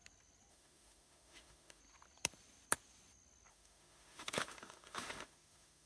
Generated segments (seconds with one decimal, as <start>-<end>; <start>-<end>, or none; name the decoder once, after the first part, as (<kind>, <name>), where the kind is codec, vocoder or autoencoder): 0.5-1.8 (autoencoder, DAC-VAE); 3.5-5.9